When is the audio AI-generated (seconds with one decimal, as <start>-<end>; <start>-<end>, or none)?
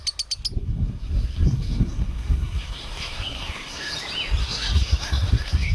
0.6-3.9; 4.4-5.7